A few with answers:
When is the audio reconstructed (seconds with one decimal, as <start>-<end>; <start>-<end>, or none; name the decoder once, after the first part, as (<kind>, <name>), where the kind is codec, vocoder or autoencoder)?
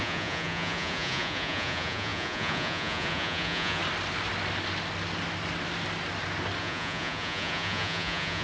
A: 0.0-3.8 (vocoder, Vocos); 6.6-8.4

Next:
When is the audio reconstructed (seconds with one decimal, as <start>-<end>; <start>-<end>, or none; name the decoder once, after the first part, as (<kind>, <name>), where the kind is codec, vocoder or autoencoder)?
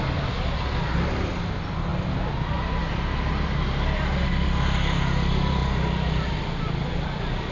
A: none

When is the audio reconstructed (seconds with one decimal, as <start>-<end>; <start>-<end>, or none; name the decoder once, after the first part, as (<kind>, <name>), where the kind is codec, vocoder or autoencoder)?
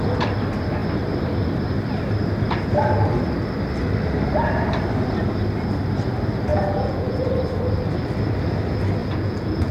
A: 6.5-7.2 (vocoder, Vocos); 9.0-9.7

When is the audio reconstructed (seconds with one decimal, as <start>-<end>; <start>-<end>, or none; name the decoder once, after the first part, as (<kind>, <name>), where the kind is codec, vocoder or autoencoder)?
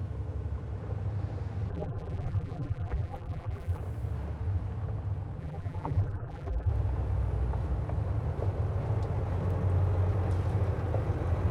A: 1.7-3.8 (vocoder, BigVGAN v2); 5.4-6.7